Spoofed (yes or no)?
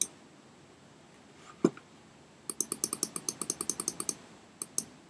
no